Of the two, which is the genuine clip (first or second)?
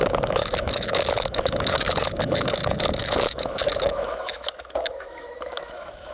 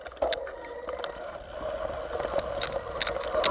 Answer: second